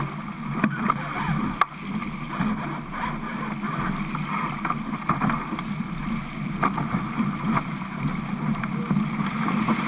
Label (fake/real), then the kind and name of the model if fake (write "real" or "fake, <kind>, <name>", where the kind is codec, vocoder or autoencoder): real